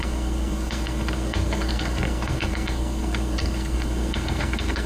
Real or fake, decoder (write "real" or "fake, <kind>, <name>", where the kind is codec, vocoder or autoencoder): fake, codec, SNAC